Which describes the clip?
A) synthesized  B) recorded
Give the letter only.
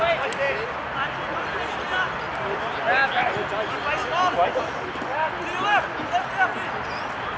B